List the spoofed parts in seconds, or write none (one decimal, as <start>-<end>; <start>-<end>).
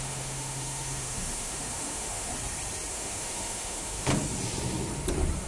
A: 0.0-2.3; 2.9-4.1